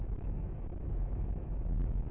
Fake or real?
fake